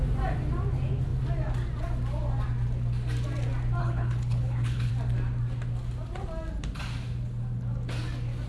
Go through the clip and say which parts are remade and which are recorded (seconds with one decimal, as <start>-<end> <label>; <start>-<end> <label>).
0.0-3.8 recorded; 3.8-4.9 remade; 4.9-8.5 recorded